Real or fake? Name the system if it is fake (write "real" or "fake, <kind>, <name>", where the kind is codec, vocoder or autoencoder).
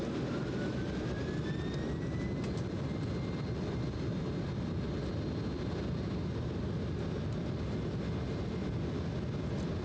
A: real